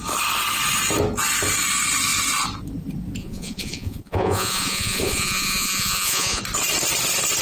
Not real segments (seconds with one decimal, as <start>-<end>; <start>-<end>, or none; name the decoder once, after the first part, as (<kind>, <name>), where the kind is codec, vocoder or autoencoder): 3.2-6.4 (vocoder, Vocos)